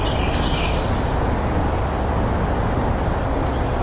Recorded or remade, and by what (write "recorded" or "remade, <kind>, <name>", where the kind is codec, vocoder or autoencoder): recorded